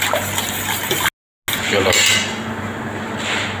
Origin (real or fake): real